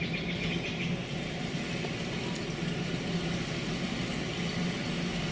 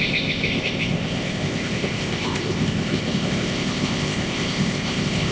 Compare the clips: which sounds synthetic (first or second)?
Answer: second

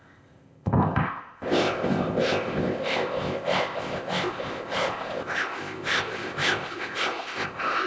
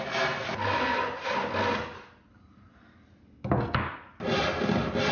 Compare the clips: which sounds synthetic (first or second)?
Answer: first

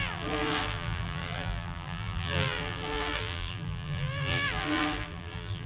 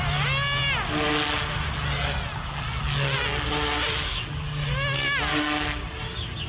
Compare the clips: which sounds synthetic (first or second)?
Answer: first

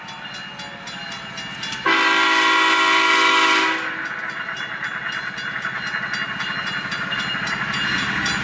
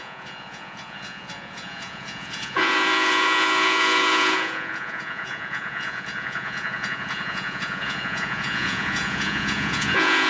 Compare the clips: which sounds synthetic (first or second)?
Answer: second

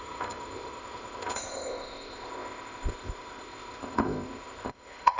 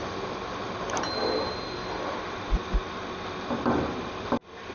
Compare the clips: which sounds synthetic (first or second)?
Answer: first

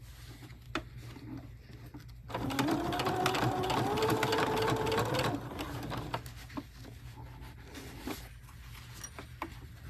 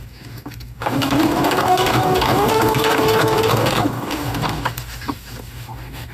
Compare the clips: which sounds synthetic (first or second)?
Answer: second